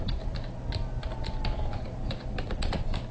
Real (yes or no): yes